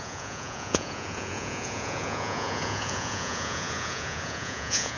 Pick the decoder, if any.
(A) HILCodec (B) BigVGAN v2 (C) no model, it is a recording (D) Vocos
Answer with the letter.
D